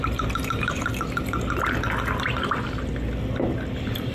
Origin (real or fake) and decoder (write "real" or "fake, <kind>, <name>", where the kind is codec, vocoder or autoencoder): real